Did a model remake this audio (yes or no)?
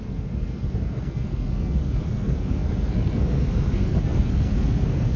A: yes